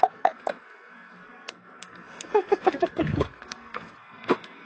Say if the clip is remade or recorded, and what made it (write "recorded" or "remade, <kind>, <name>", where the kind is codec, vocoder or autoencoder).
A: remade, codec, SNAC